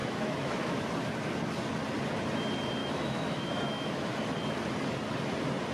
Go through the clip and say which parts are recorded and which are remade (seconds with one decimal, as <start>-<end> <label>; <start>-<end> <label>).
0.0-0.9 remade; 0.9-2.8 recorded; 2.8-4.2 remade; 4.2-5.7 recorded